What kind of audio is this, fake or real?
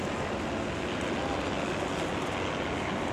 real